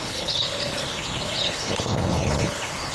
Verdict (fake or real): fake